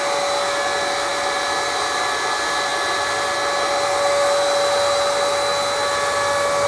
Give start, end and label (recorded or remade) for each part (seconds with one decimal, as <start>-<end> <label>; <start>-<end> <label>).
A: 0.0-6.7 recorded